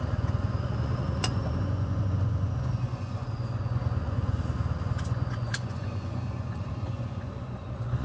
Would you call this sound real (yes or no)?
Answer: no